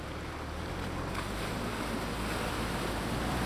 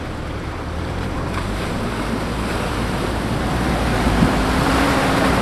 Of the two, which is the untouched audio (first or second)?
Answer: first